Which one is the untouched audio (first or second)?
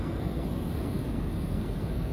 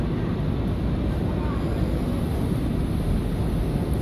second